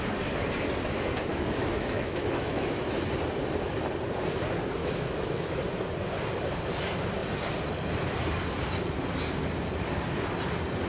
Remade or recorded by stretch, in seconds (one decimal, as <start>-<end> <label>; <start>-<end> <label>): 0.0-1.3 recorded; 1.3-3.1 remade; 3.1-4.8 recorded; 4.8-5.6 remade; 5.6-10.9 recorded